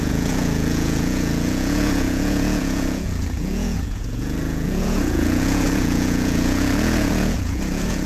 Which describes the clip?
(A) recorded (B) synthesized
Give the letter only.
B